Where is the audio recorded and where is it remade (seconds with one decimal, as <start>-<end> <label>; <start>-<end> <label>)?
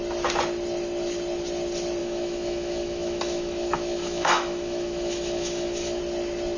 0.0-2.0 recorded; 2.0-6.0 remade; 6.0-6.6 recorded